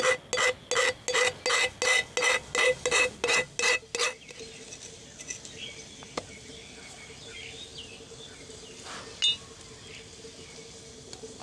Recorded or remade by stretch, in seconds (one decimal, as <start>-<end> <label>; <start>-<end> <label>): 0.0-11.4 recorded